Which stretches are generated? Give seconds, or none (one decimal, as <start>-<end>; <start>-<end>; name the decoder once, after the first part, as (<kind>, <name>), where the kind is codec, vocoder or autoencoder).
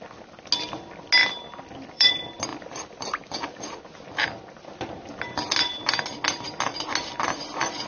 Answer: 1.2-2.1 (vocoder, BigVGAN v2); 2.5-3.8